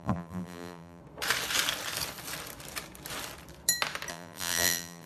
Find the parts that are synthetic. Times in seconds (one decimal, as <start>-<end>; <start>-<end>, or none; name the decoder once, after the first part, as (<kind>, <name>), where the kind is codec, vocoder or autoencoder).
0.0-1.0 (vocoder, BigVGAN v2); 4.1-5.1